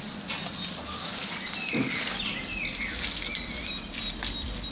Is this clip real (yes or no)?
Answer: yes